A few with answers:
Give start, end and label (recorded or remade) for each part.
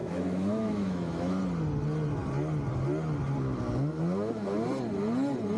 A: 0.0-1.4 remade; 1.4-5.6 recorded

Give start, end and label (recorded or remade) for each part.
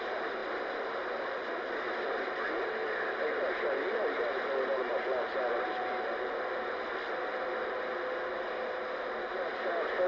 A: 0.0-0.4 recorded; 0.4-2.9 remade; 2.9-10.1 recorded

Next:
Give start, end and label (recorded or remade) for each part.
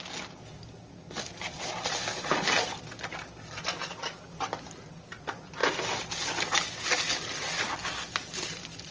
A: 0.0-8.9 recorded